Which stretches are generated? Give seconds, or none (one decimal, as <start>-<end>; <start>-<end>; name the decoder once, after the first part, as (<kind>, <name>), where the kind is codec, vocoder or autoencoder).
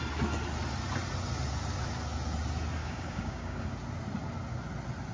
2.8-3.7 (codec, DAC)